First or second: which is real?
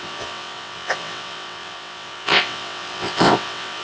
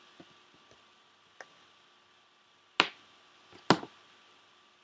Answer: second